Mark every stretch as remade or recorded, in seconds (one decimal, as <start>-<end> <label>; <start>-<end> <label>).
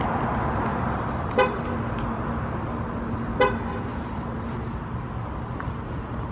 0.0-0.7 recorded; 0.7-1.7 remade; 1.7-3.9 recorded; 3.9-4.5 remade; 4.5-6.3 recorded